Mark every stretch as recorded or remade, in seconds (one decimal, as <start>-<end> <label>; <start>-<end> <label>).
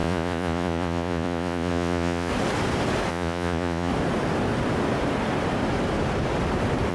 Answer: 0.0-2.3 remade; 2.3-3.1 recorded; 3.1-3.9 remade; 3.9-6.9 recorded